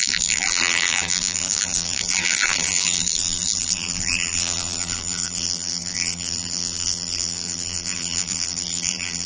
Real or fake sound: fake